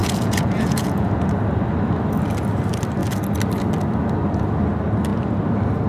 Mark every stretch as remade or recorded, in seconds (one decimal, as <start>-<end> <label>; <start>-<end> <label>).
0.0-1.1 remade; 1.1-5.9 recorded